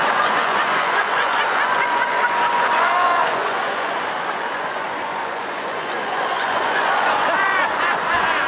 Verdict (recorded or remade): remade